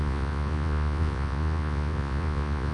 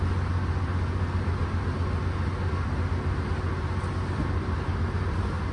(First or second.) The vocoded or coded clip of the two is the first